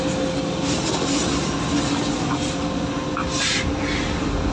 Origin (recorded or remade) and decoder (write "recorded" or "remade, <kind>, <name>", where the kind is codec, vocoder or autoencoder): recorded